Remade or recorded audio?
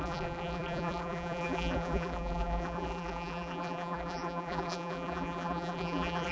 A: remade